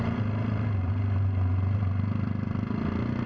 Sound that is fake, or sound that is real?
real